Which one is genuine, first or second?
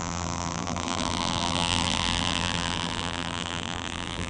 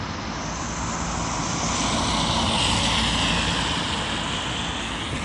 second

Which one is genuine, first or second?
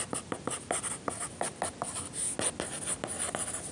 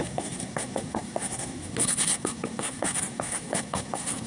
first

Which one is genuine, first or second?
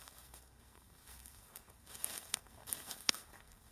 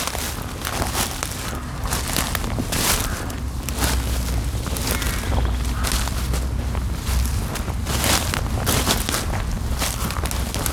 second